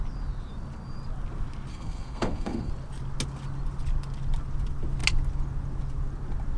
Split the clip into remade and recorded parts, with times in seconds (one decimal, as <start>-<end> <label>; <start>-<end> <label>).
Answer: 0.0-1.7 recorded; 1.7-2.7 remade; 2.7-6.6 recorded